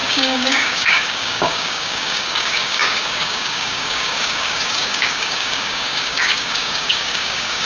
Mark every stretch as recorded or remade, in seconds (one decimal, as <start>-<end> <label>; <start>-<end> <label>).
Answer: 0.0-7.7 remade